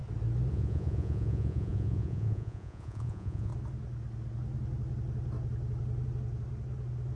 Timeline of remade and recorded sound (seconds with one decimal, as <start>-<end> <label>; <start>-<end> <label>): 0.0-0.5 recorded; 0.5-3.5 remade; 3.5-7.2 recorded